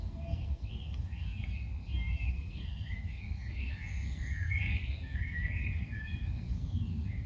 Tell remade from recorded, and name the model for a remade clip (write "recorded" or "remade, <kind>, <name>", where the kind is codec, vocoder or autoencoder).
remade, codec, SNAC